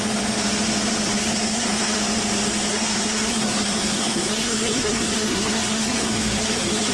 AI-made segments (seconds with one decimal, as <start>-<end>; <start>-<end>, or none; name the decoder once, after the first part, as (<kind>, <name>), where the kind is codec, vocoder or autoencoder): 1.2-2.0 (codec, SNAC); 2.7-6.9